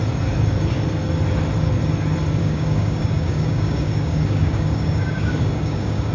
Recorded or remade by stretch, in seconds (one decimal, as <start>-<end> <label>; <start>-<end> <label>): 0.0-2.4 recorded; 2.4-6.1 remade